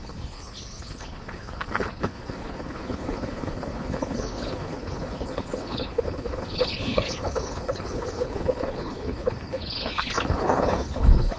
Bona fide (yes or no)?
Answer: no